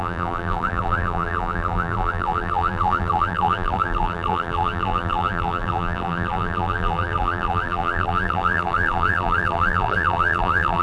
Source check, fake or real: fake